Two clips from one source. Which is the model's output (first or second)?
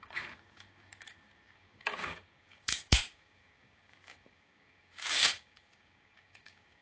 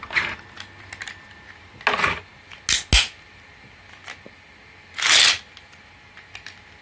first